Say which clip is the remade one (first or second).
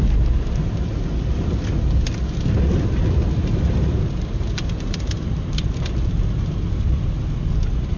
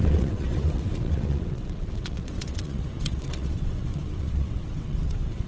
second